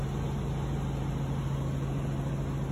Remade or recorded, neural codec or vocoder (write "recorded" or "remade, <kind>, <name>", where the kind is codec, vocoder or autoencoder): recorded